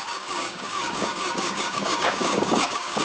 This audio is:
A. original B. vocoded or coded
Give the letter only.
B